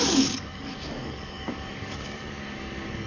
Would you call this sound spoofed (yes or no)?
yes